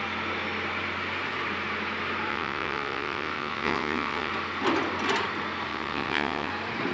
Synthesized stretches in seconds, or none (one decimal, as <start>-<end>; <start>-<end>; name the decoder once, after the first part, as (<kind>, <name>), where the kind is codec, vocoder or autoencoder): 2.3-4.3 (vocoder, WaveNeXt); 5.7-6.5

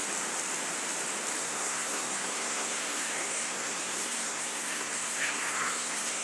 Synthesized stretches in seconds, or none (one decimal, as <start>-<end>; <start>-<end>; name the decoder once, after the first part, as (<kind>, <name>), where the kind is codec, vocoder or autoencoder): 1.4-6.2 (codec, SNAC)

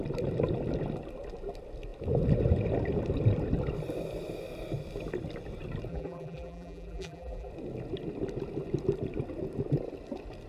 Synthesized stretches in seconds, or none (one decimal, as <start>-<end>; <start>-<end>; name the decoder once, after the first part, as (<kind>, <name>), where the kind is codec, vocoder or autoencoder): 5.9-7.5 (vocoder, BigVGAN v2)

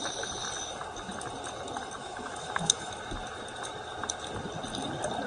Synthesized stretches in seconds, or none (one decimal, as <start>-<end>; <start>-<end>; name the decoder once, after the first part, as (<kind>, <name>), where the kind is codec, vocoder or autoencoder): 2.0-2.9 (autoencoder, DAC-VAE)

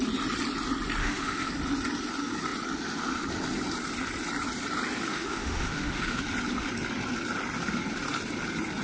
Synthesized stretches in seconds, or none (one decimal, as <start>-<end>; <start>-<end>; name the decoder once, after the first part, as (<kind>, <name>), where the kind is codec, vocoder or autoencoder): 1.0-1.5 (autoencoder, DAC-VAE); 5.1-6.2

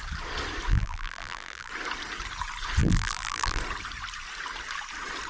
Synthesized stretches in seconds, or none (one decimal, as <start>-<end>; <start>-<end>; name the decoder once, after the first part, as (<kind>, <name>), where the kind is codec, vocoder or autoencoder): 0.7-1.7 (vocoder, BigVGAN v2); 2.8-3.6

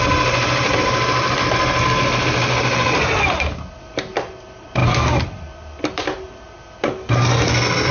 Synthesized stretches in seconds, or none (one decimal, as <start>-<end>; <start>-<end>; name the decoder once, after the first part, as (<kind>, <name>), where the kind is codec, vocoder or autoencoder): none

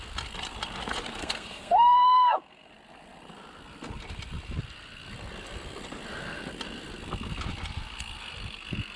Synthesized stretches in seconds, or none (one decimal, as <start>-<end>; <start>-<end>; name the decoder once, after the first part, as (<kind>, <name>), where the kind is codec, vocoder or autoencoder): 1.2-2.7 (codec, SNAC)